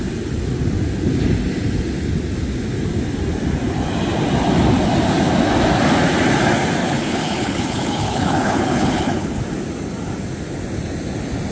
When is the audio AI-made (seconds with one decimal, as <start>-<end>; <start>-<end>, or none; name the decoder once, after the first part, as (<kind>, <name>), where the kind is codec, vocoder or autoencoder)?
6.8-9.4 (codec, HILCodec)